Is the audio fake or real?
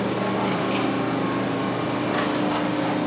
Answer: real